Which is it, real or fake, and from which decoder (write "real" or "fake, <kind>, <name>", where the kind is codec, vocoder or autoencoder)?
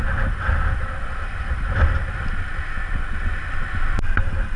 real